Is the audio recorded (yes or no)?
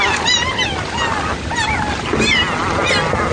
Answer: yes